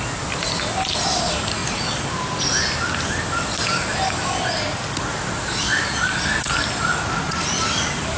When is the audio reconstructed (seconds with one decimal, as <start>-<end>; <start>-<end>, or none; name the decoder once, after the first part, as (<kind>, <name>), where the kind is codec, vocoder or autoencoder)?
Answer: none